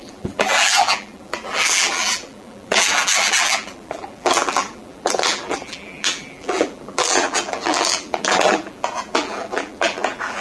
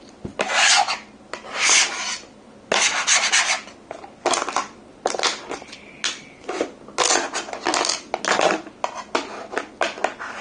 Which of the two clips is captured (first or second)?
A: second